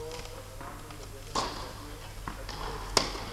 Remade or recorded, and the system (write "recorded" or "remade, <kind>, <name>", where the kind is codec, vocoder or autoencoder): recorded